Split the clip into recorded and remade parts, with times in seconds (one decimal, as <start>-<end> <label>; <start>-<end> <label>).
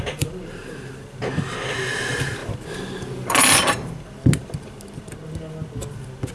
0.0-6.3 recorded